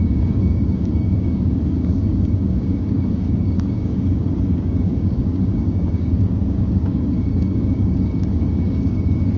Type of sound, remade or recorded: remade